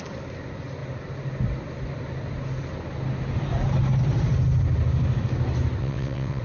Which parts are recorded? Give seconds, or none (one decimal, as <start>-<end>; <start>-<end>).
0.0-5.8